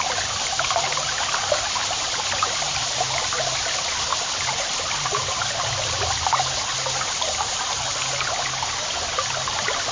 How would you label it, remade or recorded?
recorded